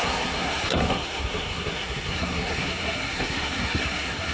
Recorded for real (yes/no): no